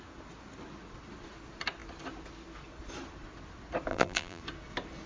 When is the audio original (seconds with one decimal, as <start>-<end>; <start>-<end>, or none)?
0.0-3.9; 4.4-5.1